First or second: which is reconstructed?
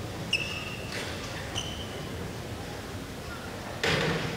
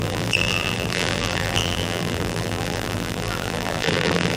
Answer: second